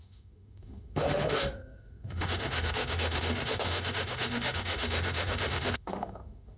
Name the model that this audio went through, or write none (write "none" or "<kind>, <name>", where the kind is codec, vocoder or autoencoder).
autoencoder, DAC-VAE